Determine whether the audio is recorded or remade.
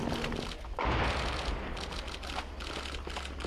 recorded